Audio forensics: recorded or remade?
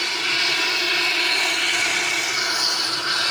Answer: recorded